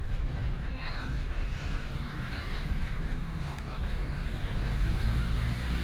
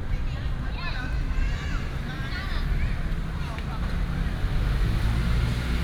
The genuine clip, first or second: second